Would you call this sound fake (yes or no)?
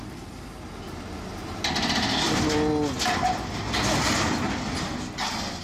no